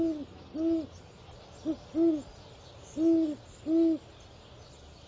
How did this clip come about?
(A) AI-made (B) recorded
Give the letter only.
B